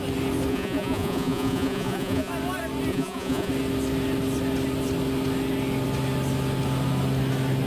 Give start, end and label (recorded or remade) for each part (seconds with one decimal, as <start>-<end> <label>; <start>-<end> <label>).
0.0-0.5 recorded; 0.5-2.3 remade; 2.3-2.9 recorded; 2.9-3.5 remade; 3.5-7.7 recorded